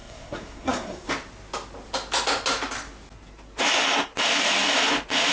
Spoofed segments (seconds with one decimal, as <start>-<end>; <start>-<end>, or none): 0.0-1.1